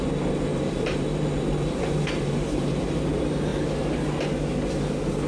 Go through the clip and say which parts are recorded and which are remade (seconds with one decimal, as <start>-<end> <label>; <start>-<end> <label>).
0.0-0.5 recorded; 0.5-3.1 remade; 3.1-5.3 recorded